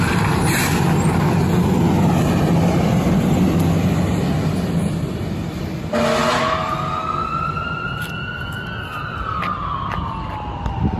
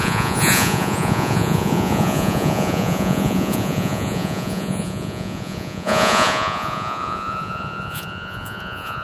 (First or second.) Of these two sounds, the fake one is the second